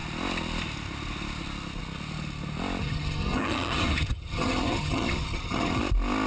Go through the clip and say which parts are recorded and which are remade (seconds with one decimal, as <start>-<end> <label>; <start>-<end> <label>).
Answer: 0.0-2.8 recorded; 2.8-5.8 remade; 5.8-6.3 recorded